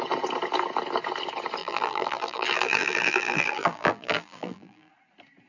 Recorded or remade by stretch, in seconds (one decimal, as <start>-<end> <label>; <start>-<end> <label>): 0.0-1.6 recorded; 1.6-4.9 remade; 4.9-5.5 recorded